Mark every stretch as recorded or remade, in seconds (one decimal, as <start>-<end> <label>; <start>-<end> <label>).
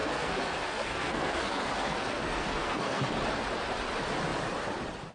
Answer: 0.0-3.1 remade; 3.1-5.1 recorded